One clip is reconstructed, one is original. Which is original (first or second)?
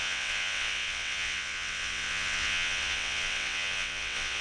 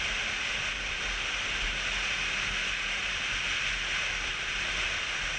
second